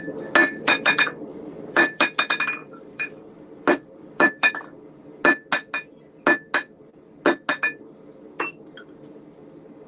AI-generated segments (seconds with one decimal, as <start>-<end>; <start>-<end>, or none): 0.4-2.2; 2.6-4.5